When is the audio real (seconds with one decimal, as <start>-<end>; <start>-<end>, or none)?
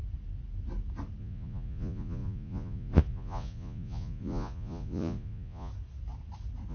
0.0-1.2; 5.7-6.7